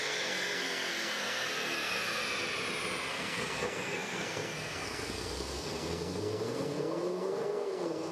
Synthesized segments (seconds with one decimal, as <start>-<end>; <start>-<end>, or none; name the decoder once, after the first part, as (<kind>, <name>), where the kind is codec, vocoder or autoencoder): 0.0-2.2 (codec, SNAC); 3.1-8.1